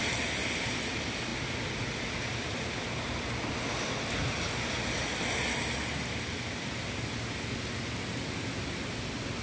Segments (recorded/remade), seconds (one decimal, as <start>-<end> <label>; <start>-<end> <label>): 0.0-9.4 recorded